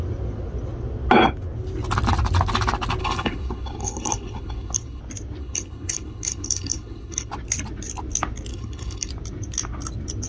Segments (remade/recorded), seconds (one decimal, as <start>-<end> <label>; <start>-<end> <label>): 0.0-3.0 recorded; 3.0-5.0 remade; 5.0-5.4 recorded; 5.4-7.3 remade; 7.3-8.5 recorded; 8.5-9.1 remade; 9.1-10.3 recorded